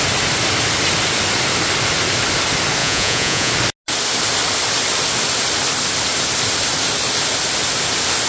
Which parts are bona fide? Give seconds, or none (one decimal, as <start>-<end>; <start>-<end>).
0.0-2.8; 3.5-8.3

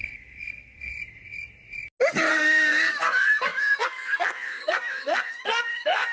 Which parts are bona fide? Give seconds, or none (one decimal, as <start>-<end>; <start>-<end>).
0.9-2.3

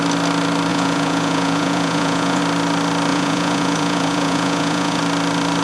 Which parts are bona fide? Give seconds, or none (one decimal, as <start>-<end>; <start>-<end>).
0.0-0.7; 2.4-3.1; 5.0-5.6

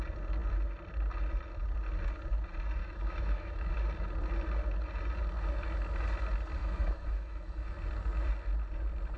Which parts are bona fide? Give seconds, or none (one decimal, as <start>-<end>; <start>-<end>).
0.0-2.8; 3.7-6.6; 7.7-9.2

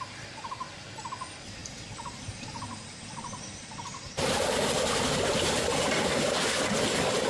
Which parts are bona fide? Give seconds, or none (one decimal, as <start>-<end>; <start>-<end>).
0.0-7.3

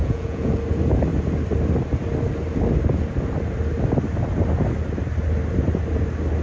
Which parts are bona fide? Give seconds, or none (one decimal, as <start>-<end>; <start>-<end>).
0.6-6.4

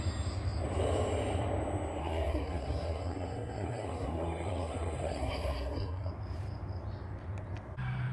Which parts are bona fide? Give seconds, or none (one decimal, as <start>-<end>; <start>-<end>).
0.0-2.0; 6.1-8.1

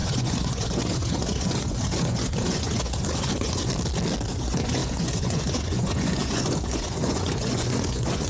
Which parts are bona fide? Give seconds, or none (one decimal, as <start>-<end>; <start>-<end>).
3.7-4.3